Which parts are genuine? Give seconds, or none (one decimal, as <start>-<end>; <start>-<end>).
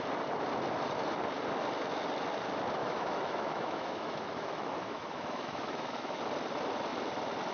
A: 0.0-2.8; 6.2-7.5